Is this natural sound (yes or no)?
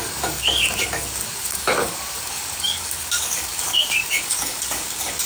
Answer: no